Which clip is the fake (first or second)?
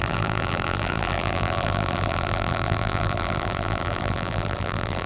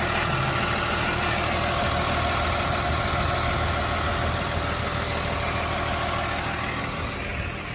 first